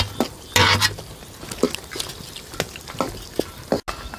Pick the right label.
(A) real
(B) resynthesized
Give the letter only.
A